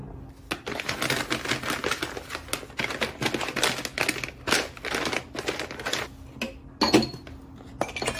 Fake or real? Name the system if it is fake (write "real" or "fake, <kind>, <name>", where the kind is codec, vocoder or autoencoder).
real